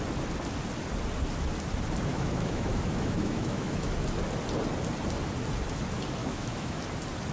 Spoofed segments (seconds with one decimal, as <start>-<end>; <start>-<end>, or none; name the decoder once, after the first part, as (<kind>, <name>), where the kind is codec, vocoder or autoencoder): 2.1-3.9 (autoencoder, DAC-VAE); 6.2-6.8